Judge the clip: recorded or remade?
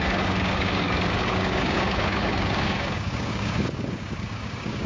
remade